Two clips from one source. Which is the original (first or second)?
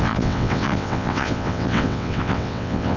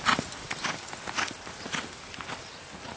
second